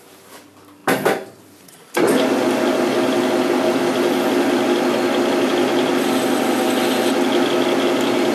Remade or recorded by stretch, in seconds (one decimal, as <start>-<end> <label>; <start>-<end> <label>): 0.0-8.3 recorded